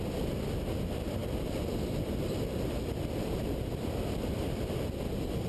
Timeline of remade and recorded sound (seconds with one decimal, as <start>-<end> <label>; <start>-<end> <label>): 0.0-5.5 recorded